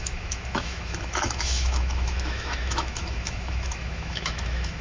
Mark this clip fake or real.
fake